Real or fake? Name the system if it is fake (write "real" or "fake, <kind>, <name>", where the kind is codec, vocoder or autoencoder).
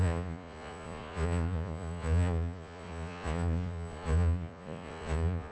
fake, vocoder, Vocos